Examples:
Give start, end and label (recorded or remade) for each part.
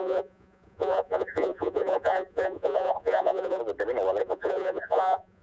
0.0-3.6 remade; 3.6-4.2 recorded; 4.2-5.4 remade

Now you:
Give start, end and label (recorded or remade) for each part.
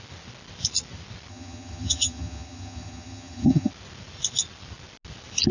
0.0-1.3 recorded; 1.3-3.7 remade; 3.7-5.5 recorded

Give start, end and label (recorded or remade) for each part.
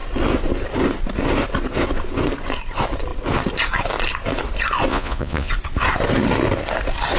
0.0-4.9 recorded; 4.9-5.5 remade; 5.5-7.2 recorded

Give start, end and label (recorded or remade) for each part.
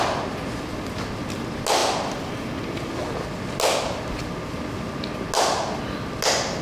0.0-6.6 recorded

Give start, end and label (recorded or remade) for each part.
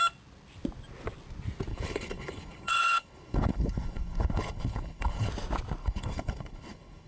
0.0-1.7 recorded; 1.7-5.3 remade; 5.3-5.8 recorded; 5.8-7.1 remade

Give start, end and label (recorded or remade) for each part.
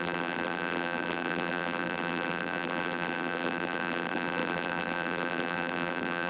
0.0-6.3 remade